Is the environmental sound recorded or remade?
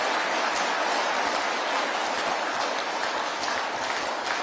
recorded